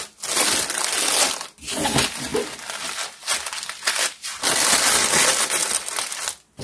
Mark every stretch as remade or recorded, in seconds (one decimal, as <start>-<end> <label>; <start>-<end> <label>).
0.0-6.6 recorded